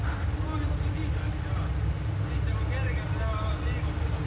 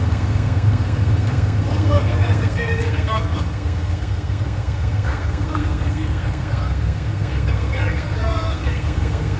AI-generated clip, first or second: second